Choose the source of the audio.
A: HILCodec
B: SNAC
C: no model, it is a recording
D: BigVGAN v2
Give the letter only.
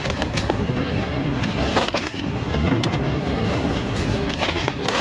B